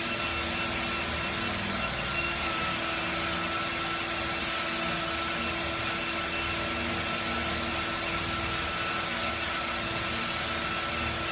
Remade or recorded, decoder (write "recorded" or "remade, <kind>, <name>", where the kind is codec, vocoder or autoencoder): recorded